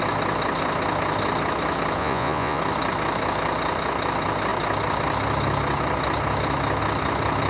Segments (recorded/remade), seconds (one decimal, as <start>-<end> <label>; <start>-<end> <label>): 0.0-2.0 recorded; 2.0-2.6 remade; 2.6-7.5 recorded